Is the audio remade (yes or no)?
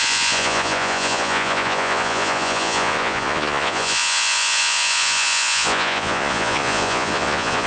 yes